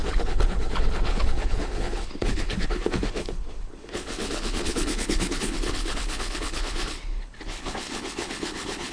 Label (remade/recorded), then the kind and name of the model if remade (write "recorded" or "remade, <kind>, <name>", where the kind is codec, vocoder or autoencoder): remade, codec, HILCodec